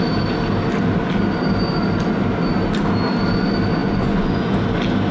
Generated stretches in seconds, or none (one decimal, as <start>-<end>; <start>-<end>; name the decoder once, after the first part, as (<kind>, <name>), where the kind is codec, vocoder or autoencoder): 3.8-4.4 (vocoder, Vocos)